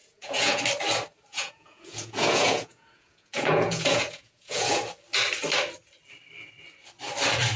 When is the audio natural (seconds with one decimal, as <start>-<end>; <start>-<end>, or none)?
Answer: 0.6-1.3; 4.8-7.6